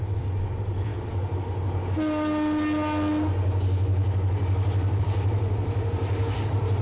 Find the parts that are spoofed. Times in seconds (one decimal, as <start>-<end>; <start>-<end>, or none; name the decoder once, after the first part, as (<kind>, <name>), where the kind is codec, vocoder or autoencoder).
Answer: 0.0-0.9 (vocoder, BigVGAN v2); 5.0-6.8